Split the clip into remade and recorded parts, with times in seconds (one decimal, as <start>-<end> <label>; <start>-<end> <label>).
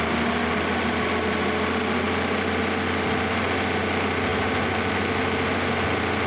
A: 0.0-6.3 recorded